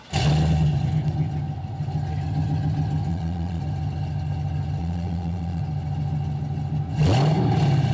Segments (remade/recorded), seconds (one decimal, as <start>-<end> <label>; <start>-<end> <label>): 0.0-3.1 recorded; 3.1-3.6 remade; 3.6-4.8 recorded; 4.8-5.6 remade; 5.6-7.9 recorded